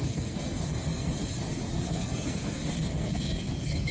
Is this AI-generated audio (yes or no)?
yes